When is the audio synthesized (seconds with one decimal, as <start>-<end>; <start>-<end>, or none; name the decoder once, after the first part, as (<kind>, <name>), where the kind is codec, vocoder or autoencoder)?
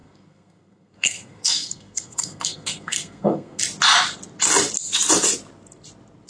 0.0-3.6 (codec, SNAC)